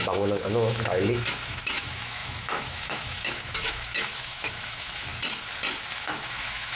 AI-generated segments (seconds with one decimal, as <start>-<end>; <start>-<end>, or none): 0.0-5.1; 5.9-6.8